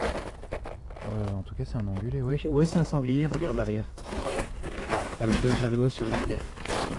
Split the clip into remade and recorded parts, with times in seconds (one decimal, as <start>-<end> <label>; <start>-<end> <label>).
0.0-2.3 recorded; 2.3-6.5 remade; 6.5-7.0 recorded